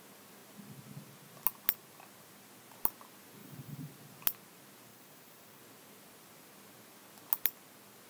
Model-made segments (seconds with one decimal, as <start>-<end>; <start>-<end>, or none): 3.4-3.9; 4.9-5.6